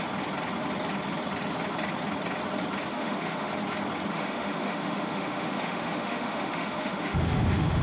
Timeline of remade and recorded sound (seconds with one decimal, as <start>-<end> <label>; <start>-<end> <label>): 0.0-2.9 recorded; 2.9-3.5 remade; 3.5-4.1 recorded; 4.1-7.8 remade